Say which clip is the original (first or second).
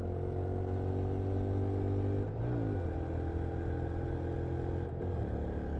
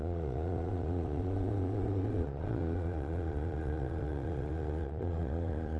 first